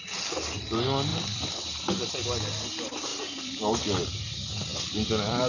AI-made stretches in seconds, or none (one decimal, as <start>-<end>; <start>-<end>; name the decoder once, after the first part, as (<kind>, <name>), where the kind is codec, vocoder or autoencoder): 1.1-2.1 (vocoder, BigVGAN v2); 4.7-5.5

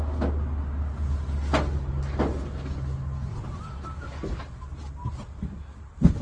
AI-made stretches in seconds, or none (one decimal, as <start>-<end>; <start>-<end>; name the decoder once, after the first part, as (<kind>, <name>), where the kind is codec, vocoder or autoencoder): 3.3-3.8 (vocoder, WaveNeXt)

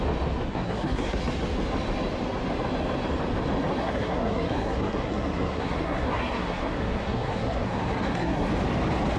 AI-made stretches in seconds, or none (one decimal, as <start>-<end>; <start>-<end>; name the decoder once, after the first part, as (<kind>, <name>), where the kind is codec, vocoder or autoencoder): 0.5-1.2 (codec, SNAC); 3.8-8.5

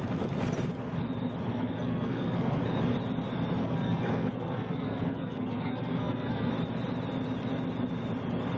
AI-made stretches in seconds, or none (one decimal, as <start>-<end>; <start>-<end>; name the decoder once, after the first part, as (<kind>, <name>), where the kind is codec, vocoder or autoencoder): 1.5-2.6 (codec, SNAC); 3.6-6.5